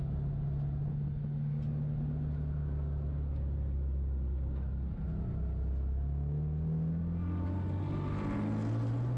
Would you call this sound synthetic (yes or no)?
no